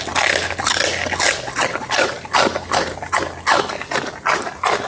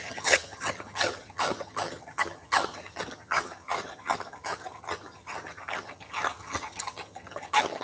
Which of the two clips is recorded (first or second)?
first